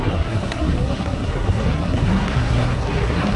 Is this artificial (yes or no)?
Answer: yes